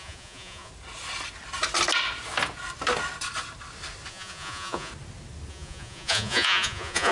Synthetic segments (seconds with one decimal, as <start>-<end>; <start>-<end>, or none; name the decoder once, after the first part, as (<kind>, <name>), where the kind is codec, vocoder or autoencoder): 0.0-0.7 (vocoder, Vocos); 4.1-4.9; 5.5-7.1